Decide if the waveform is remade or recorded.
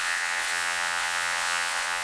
remade